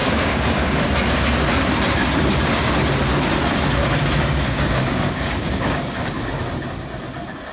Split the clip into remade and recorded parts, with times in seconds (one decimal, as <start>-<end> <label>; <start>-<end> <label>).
0.0-0.8 remade; 0.8-3.8 recorded; 3.8-6.2 remade; 6.2-7.5 recorded